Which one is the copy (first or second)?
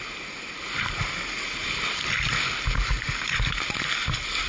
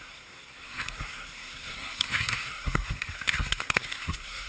second